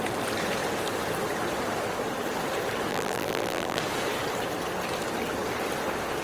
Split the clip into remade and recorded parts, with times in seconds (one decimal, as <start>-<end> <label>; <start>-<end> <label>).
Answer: 0.0-2.9 recorded; 2.9-3.8 remade; 3.8-6.2 recorded